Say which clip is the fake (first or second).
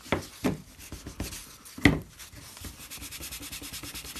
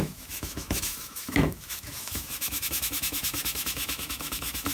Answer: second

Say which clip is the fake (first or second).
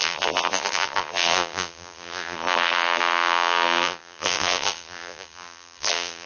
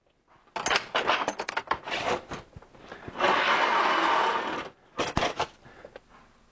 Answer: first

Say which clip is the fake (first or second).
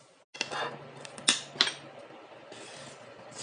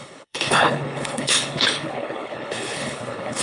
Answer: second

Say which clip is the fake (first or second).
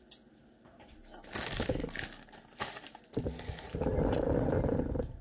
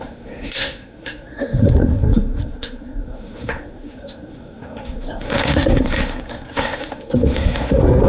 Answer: second